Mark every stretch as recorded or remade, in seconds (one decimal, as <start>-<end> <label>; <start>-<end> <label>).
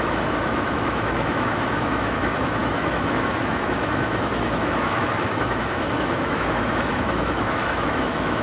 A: 0.0-8.4 remade